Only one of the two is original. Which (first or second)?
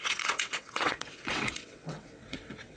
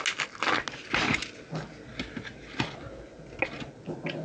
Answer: second